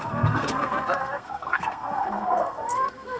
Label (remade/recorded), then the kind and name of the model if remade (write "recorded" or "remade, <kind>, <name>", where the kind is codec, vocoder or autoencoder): remade, codec, SNAC